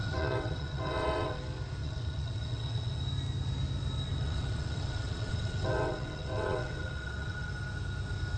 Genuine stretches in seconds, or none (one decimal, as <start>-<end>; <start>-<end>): 1.4-1.8; 3.0-4.1; 7.5-8.4